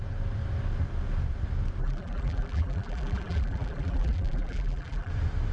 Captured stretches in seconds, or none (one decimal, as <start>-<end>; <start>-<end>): 0.0-1.8; 5.1-5.5